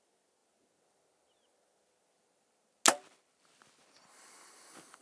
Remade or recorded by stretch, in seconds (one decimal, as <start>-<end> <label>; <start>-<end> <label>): 0.0-5.0 recorded